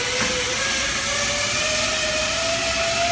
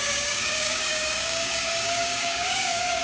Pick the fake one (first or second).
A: second